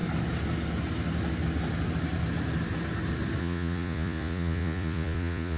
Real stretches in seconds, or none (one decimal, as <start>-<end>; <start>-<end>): 0.0-3.4